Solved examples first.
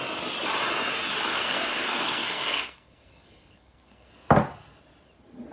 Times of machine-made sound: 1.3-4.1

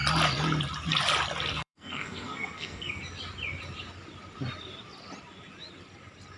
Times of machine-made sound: 1.5-3.0

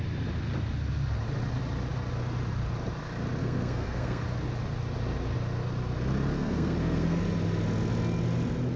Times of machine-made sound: 3.4-4.2; 6.3-7.2

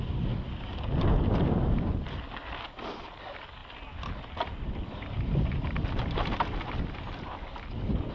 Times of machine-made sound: none

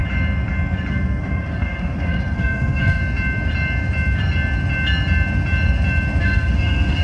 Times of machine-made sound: 0.9-3.0; 6.2-7.0

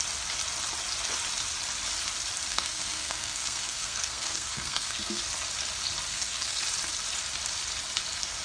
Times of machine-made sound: 2.5-5.2; 6.1-6.6

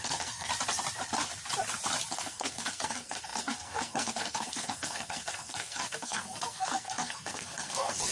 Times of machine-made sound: 0.0-0.5; 2.1-8.1

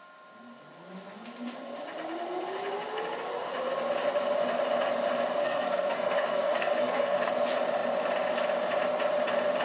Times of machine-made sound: 5.4-7.3